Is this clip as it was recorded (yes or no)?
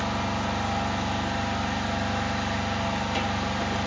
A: yes